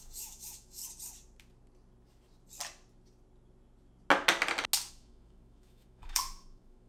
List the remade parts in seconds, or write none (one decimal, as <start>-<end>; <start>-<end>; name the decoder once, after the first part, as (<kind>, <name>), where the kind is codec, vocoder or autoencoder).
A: 0.0-0.8 (autoencoder, DAC-VAE); 4.9-6.9